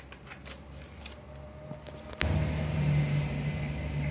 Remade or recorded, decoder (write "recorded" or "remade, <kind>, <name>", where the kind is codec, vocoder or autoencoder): recorded